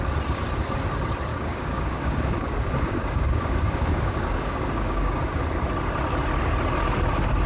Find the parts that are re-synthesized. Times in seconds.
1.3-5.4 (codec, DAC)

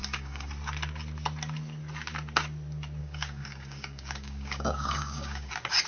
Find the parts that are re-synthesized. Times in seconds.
0.0-0.5 (codec, DAC); 3.0-5.5

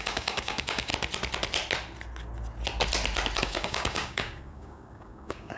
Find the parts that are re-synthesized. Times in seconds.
0.0-0.9 (codec, DAC); 3.4-5.6

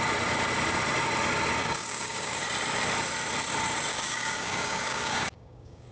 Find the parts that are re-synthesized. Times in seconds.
1.6-2.4 (codec, DAC); 3.9-5.9

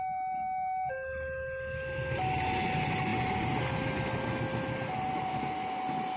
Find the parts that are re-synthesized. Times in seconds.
none

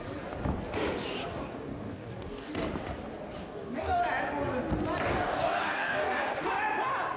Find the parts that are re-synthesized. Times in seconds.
1.3-2.5 (codec, DAC); 3.4-4.0; 5.1-6.5